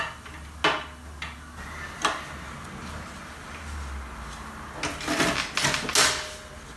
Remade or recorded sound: recorded